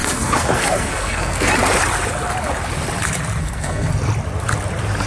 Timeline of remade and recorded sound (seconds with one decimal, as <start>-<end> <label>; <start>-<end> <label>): 0.0-1.5 remade; 1.5-3.4 recorded; 3.4-3.9 remade; 3.9-5.1 recorded